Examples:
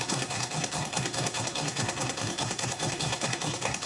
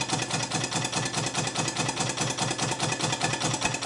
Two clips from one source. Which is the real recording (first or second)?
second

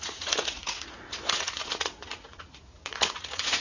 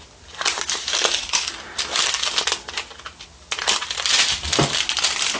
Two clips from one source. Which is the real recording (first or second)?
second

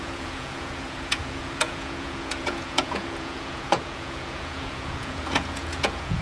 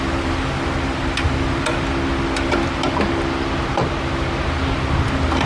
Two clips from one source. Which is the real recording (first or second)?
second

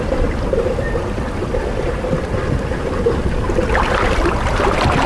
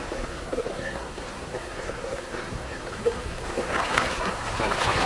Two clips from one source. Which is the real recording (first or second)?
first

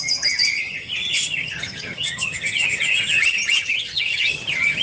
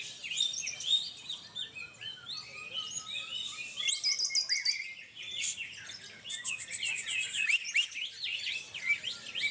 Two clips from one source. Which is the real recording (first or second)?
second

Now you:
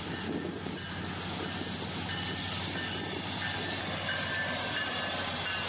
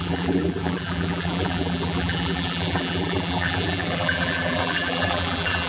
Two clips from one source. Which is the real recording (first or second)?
first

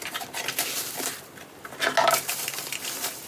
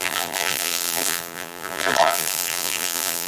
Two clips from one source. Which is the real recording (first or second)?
first